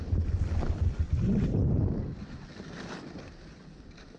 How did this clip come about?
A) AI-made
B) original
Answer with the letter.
B